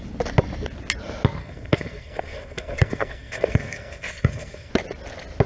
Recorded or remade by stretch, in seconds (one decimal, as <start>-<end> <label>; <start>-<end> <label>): 0.0-1.4 recorded; 1.4-4.7 remade; 4.7-5.5 recorded